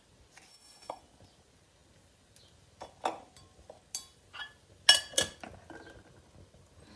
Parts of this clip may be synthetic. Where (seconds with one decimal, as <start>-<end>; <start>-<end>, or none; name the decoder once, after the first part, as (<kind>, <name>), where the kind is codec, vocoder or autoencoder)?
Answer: 0.5-1.0 (codec, DAC)

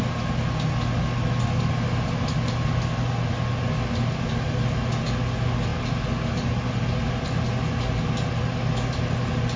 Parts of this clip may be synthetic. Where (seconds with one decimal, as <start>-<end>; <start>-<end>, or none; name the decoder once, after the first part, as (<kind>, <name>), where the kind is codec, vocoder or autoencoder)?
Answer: none

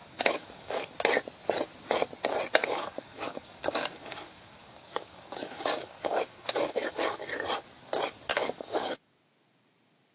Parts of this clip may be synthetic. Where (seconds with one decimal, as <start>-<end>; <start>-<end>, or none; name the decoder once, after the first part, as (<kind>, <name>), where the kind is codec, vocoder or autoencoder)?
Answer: 0.0-0.9 (codec, DAC); 2.6-7.3; 8.3-9.2